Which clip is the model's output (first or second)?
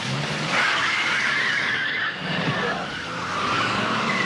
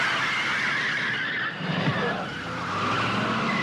first